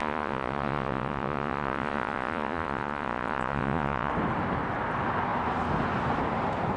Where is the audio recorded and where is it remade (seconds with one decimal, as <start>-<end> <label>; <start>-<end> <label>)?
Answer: 0.0-4.1 remade; 4.1-6.8 recorded